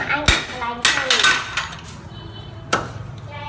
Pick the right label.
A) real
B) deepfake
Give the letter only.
A